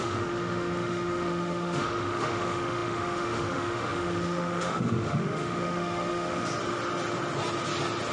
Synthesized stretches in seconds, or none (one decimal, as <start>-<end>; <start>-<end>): 0.0-6.5